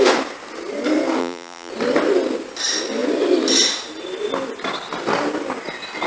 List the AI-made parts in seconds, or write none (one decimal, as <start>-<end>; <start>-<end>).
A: 1.2-1.7